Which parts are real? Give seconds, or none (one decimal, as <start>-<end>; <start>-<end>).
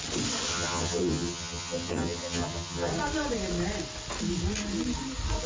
0.0-0.5; 2.9-5.5